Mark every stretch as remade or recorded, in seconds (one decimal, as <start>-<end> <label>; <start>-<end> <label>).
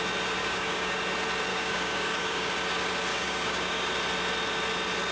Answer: 0.0-0.4 recorded; 0.4-1.0 remade; 1.0-1.5 recorded; 1.5-2.5 remade; 2.5-3.1 recorded; 3.1-3.9 remade; 3.9-5.1 recorded